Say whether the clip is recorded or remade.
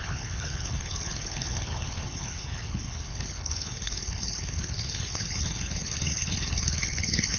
remade